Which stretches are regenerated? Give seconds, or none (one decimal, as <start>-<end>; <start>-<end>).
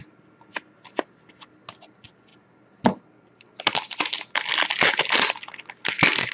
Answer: none